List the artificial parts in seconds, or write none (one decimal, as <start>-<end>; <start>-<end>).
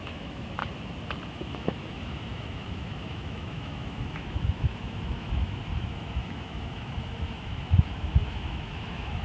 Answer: 0.0-0.6; 1.3-9.2